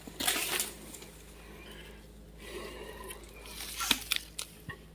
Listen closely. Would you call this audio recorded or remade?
recorded